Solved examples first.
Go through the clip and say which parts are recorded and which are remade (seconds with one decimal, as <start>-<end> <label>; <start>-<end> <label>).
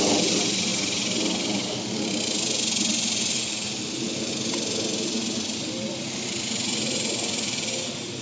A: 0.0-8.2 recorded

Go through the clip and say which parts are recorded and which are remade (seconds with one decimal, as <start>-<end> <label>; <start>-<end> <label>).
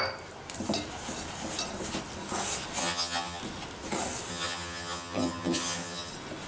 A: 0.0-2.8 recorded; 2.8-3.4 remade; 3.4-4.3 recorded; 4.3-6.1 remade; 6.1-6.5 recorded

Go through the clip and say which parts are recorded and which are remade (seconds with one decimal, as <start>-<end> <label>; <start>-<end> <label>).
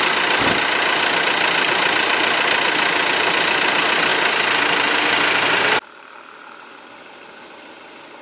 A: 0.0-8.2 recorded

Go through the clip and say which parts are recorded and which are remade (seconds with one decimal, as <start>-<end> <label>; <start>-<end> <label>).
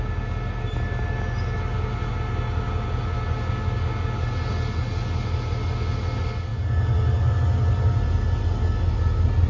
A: 0.0-9.5 recorded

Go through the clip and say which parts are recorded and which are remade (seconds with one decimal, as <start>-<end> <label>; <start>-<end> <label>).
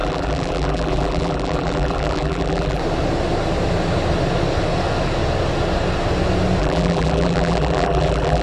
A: 0.0-2.8 remade; 2.8-6.6 recorded; 6.6-8.4 remade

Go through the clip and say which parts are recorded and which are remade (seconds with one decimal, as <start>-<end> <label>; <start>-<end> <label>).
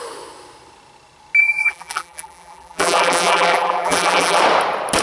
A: 0.0-1.4 recorded; 1.4-4.4 remade; 4.4-5.0 recorded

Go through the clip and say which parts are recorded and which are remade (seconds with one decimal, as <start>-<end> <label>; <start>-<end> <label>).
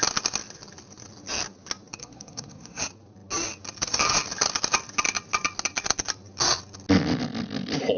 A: 0.0-2.0 recorded; 2.0-2.8 remade; 2.8-8.0 recorded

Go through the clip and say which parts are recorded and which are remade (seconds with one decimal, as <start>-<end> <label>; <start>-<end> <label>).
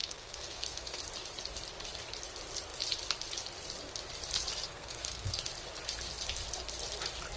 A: 0.0-1.0 remade; 1.0-4.7 recorded; 4.7-5.4 remade; 5.4-7.4 recorded